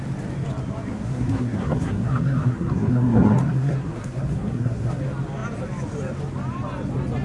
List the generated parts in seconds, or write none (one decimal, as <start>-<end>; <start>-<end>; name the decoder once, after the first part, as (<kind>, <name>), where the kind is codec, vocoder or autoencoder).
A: 0.9-5.0 (codec, SNAC)